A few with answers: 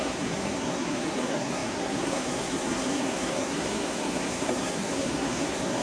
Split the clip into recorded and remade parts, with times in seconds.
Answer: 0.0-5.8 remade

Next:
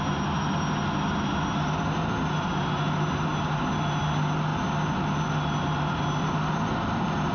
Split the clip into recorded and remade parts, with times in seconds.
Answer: 0.0-7.3 recorded

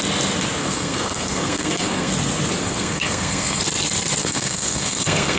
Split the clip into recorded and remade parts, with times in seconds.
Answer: 0.0-0.6 recorded; 0.6-2.1 remade; 2.1-2.6 recorded; 2.6-3.6 remade; 3.6-4.2 recorded; 4.2-5.4 remade

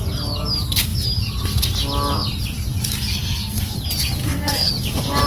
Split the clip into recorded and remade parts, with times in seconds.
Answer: 0.0-3.1 recorded; 3.1-3.6 remade; 3.6-4.2 recorded; 4.2-4.7 remade; 4.7-5.3 recorded

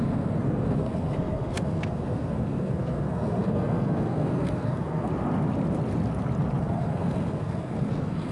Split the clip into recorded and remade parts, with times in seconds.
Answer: 0.0-5.1 remade; 5.1-6.6 recorded; 6.6-8.3 remade

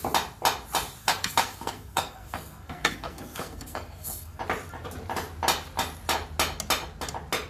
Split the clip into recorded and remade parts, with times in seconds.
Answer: 0.0-1.0 recorded; 1.0-4.4 remade; 4.4-7.5 recorded

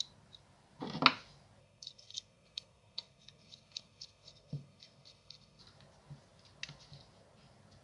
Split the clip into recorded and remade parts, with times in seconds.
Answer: 0.0-1.6 recorded; 1.6-5.6 remade; 5.6-7.8 recorded